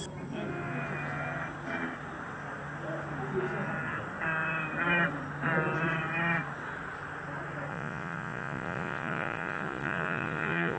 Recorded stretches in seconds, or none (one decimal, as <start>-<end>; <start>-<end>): 0.0-7.7